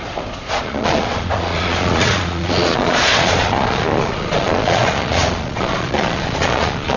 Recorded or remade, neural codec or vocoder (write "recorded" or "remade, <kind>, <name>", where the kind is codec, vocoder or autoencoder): remade, vocoder, Vocos